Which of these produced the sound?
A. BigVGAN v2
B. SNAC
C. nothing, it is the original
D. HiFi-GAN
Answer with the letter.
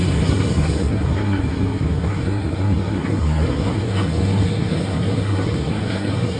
B